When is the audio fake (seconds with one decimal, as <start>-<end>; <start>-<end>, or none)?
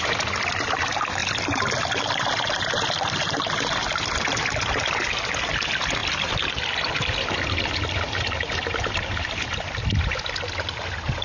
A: 0.0-1.2; 1.8-11.2